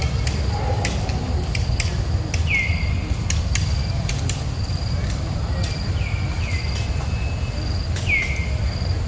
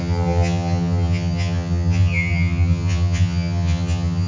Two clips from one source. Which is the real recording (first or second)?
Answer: first